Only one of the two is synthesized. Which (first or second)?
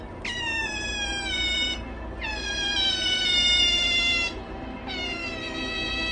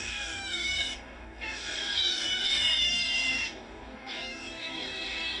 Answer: second